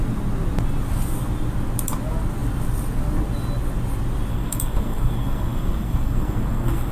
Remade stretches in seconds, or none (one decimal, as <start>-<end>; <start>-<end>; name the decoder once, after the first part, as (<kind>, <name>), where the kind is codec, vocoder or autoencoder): 4.3-6.9 (codec, SNAC)